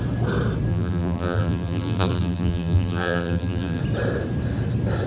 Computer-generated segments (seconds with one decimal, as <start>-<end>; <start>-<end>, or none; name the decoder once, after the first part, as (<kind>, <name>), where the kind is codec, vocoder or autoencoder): 0.7-3.8 (vocoder, BigVGAN v2)